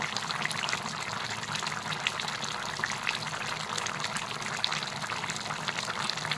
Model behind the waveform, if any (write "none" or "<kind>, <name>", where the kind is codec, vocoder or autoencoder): none